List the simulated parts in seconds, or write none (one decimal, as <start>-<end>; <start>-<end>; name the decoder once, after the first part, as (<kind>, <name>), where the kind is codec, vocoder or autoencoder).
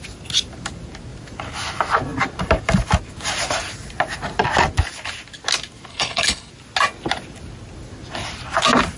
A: 5.9-6.5 (codec, HILCodec)